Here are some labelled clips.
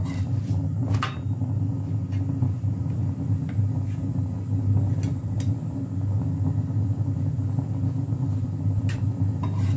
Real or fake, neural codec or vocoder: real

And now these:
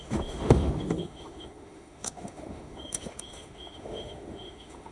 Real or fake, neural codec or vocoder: fake, autoencoder, DAC-VAE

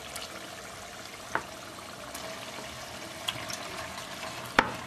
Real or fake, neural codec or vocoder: real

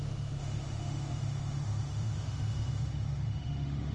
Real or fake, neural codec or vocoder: fake, autoencoder, DAC-VAE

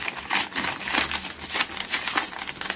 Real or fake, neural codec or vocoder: real